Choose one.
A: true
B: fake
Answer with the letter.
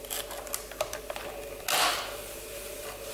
A